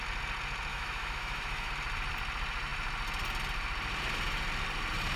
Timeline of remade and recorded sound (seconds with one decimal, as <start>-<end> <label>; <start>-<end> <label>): 0.0-0.7 recorded; 0.7-1.7 remade; 1.7-5.2 recorded